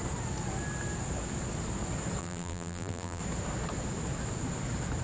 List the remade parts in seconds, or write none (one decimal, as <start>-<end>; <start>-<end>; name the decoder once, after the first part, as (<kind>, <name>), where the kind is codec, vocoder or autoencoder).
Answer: 2.2-3.2 (vocoder, BigVGAN v2)